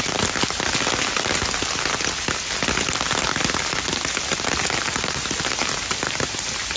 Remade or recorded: recorded